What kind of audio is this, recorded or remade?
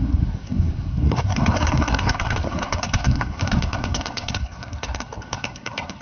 remade